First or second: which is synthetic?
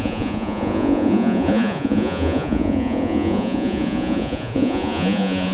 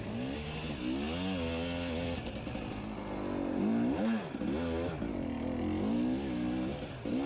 first